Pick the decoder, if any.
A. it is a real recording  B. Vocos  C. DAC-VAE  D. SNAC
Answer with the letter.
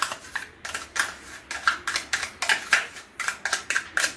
A